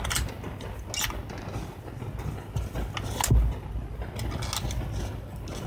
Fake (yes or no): no